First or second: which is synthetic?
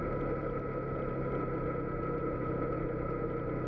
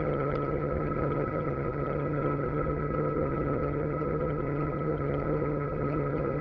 second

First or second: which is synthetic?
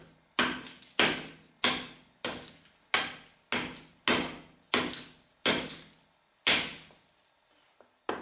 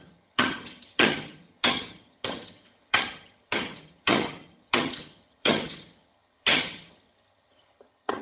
second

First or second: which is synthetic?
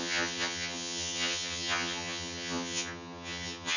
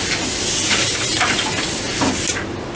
first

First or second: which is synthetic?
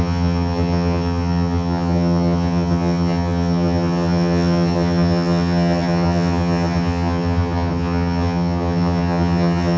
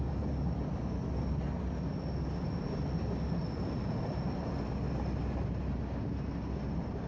first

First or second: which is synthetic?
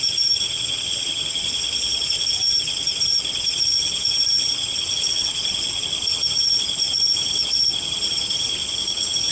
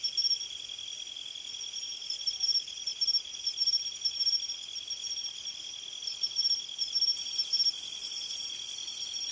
first